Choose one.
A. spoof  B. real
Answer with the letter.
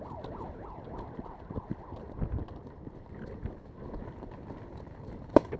B